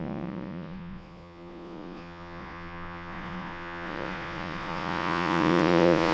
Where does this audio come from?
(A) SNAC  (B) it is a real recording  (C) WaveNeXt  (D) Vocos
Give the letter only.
D